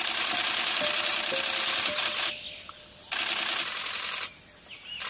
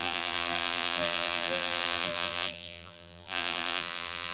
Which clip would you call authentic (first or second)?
first